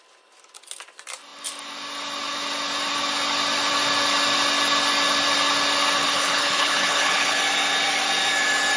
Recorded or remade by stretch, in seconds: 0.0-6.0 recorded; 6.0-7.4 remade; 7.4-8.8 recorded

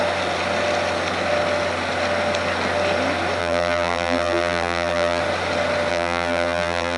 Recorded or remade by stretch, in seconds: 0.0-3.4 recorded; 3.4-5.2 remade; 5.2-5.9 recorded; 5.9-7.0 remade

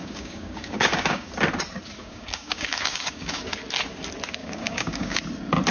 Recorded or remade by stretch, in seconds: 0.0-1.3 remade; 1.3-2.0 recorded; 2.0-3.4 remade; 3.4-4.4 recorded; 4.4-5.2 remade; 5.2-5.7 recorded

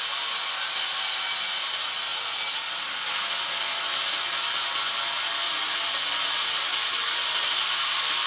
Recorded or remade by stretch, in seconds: 0.0-8.3 recorded

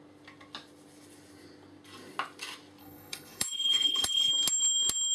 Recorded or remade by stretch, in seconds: 0.0-2.8 recorded; 2.8-4.3 remade; 4.3-5.1 recorded